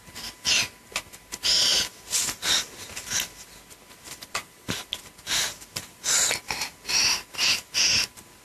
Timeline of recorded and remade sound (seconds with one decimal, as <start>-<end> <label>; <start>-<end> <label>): 0.0-8.4 recorded